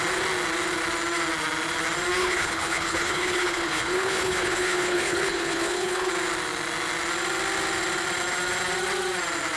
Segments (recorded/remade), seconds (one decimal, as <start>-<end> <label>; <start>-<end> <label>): 0.0-2.2 recorded; 2.2-6.1 remade; 6.1-9.6 recorded